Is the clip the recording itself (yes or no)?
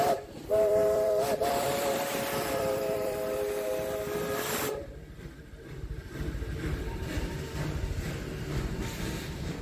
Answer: no